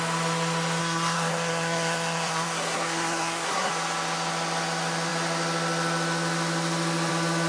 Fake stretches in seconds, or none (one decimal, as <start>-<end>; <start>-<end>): 0.8-3.7